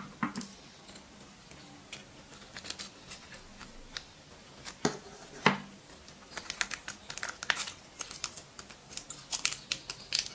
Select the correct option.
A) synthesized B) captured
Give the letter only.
B